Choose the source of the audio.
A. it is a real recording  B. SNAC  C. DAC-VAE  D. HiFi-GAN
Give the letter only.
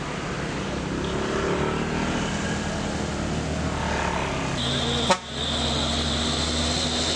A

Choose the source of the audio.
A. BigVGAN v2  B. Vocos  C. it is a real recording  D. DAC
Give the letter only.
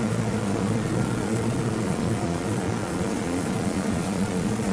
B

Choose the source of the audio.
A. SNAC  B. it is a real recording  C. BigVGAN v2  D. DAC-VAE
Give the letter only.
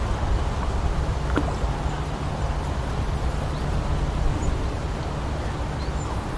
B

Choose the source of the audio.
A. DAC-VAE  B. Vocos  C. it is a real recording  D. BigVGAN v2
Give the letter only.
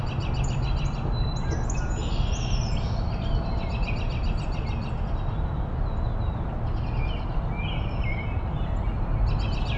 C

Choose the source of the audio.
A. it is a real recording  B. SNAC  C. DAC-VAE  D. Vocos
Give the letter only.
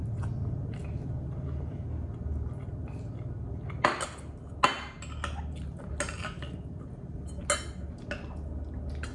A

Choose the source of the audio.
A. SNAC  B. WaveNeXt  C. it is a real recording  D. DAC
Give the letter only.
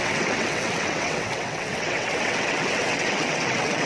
B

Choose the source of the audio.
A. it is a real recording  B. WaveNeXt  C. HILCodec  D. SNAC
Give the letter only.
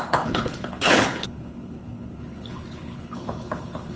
C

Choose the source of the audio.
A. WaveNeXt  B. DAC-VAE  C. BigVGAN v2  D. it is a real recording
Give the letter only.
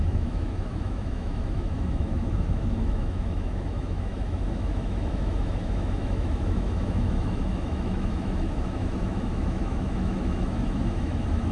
B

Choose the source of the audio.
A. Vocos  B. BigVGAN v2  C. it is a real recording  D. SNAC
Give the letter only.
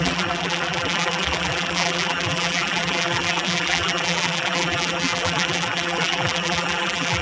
B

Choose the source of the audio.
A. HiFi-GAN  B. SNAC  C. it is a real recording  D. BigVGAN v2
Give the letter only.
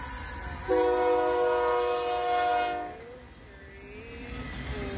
C